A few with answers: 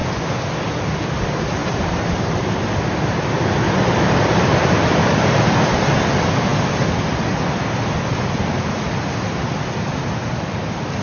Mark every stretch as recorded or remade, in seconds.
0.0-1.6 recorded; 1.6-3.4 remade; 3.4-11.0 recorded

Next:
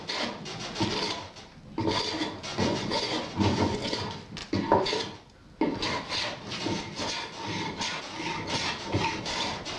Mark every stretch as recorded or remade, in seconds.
0.0-2.5 recorded; 2.5-4.0 remade; 4.0-9.8 recorded